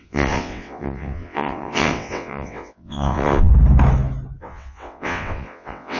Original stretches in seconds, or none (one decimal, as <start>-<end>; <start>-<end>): 3.5-4.4